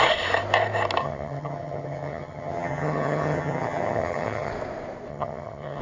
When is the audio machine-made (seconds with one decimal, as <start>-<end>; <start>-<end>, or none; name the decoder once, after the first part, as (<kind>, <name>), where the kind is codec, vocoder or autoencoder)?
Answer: 1.0-4.5 (vocoder, HiFi-GAN); 5.1-5.8